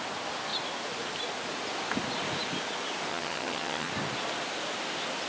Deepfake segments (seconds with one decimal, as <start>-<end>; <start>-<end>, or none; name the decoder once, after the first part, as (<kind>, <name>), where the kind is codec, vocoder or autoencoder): 3.1-3.9 (vocoder, HiFi-GAN)